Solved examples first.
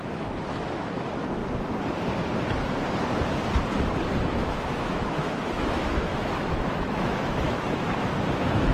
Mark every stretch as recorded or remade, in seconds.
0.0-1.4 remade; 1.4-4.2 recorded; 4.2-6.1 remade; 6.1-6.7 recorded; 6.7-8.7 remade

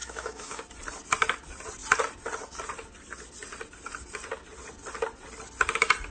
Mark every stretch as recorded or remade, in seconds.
0.0-0.6 remade; 0.6-6.1 recorded